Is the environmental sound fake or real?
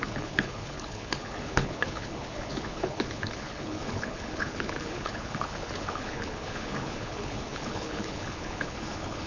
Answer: fake